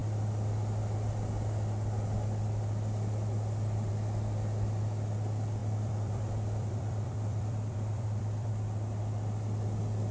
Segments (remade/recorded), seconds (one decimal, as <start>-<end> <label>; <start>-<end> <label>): 0.0-5.6 recorded; 5.6-8.5 remade; 8.5-10.1 recorded